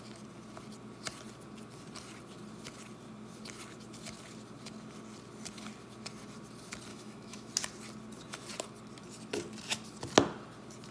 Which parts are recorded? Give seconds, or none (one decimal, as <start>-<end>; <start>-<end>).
0.0-6.9; 7.5-10.9